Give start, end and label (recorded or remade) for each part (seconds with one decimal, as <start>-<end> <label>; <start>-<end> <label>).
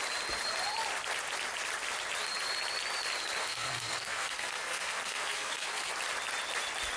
0.0-3.4 recorded; 3.4-5.9 remade; 5.9-7.0 recorded